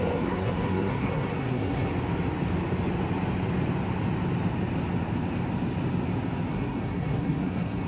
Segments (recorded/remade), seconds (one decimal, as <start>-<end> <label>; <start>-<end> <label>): 0.0-1.9 remade; 1.9-6.5 recorded; 6.5-7.9 remade